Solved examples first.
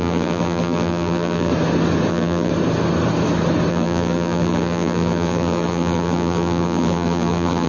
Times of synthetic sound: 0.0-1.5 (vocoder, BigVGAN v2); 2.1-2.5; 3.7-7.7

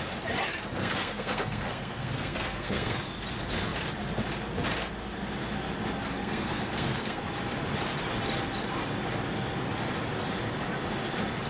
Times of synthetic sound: 0.8-3.1 (codec, SNAC); 6.2-7.2

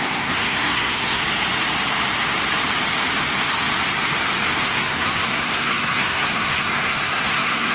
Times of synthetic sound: 0.0-1.2 (codec, SNAC); 4.6-7.7

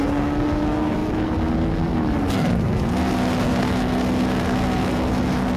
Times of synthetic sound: 0.0-5.6 (codec, SNAC)